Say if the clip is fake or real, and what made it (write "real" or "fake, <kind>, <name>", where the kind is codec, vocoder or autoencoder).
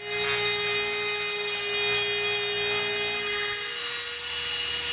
real